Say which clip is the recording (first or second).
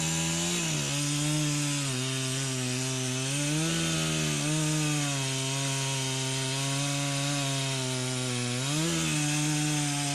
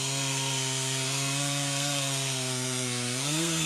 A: first